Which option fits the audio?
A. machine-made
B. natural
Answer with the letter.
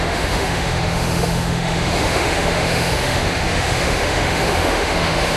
A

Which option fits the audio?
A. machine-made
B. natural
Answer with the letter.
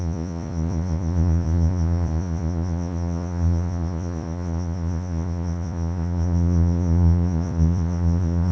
A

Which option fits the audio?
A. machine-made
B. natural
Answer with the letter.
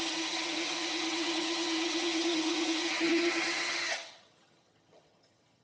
A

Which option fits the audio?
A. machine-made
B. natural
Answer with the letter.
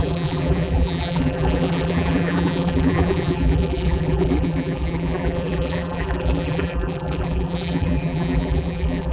A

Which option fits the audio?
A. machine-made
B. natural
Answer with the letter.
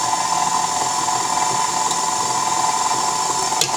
B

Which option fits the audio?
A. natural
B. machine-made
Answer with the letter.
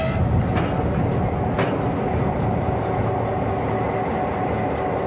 A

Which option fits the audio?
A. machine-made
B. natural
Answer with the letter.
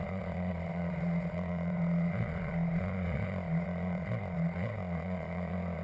A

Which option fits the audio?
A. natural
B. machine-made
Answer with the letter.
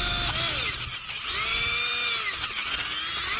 B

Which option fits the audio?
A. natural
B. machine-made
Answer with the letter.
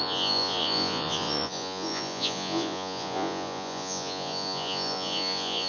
B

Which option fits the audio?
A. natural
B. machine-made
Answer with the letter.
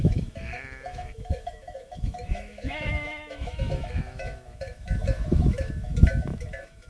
B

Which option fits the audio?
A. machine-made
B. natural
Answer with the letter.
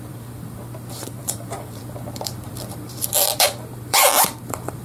A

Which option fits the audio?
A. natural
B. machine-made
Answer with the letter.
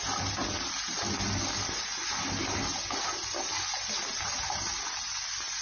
A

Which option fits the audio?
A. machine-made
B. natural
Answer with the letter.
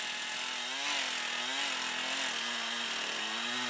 B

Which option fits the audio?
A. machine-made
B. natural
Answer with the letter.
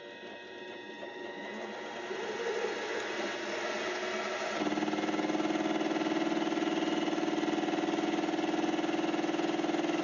B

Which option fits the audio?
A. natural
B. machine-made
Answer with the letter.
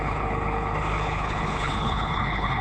B